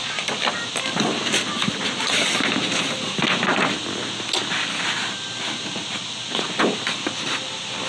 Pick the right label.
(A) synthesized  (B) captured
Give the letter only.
B